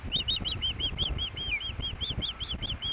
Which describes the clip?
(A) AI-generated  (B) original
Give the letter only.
B